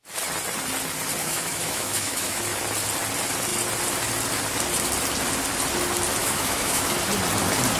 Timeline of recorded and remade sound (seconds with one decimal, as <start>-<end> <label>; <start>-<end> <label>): 0.0-1.2 recorded; 1.2-2.4 remade; 2.4-6.2 recorded; 6.2-6.9 remade; 6.9-7.8 recorded